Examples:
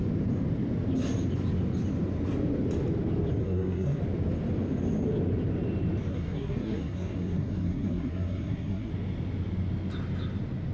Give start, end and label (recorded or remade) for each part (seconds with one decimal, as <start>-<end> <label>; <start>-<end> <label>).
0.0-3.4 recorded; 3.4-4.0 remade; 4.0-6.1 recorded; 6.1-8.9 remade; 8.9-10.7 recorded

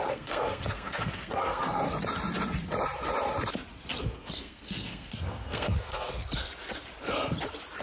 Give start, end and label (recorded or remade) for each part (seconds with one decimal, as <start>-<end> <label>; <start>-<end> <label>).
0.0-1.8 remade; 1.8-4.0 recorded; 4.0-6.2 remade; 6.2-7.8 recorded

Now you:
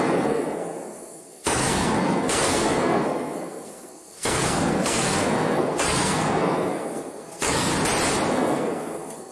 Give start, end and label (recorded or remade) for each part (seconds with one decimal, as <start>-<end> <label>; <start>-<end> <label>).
0.0-7.7 remade; 7.7-8.3 recorded; 8.3-9.3 remade